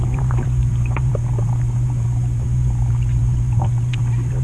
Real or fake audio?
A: fake